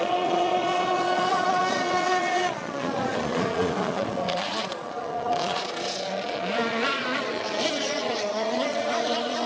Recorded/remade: remade